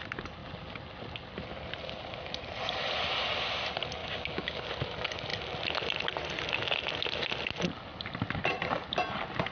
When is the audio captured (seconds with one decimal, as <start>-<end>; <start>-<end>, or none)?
0.0-4.0; 4.7-9.5